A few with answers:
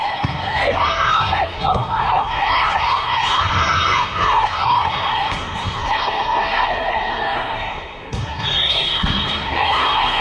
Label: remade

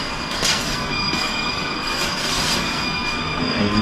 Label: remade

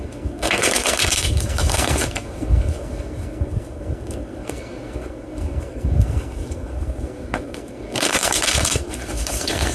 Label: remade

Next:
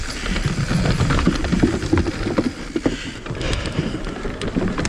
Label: recorded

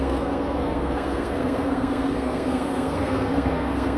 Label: remade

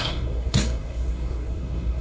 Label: remade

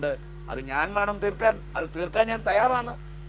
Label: remade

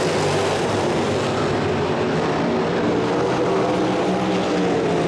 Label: recorded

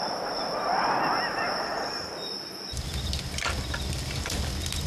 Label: recorded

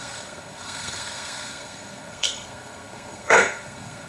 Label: remade